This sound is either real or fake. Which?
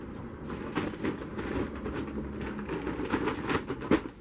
real